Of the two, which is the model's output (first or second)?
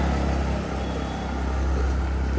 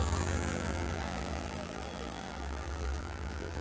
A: second